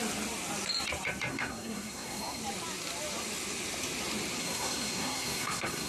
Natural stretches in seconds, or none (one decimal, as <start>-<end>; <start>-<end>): 0.0-1.3; 2.4-4.4